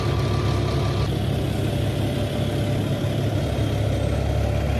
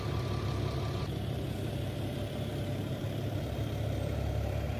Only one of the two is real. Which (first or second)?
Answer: first